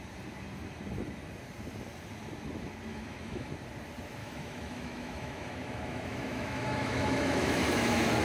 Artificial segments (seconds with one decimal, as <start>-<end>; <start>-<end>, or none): 2.9-3.5; 4.2-8.2